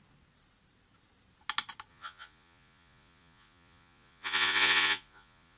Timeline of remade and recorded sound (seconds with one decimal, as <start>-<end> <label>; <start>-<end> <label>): 0.0-1.9 recorded; 1.9-5.6 remade